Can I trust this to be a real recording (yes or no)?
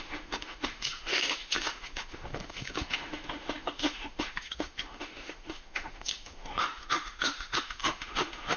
no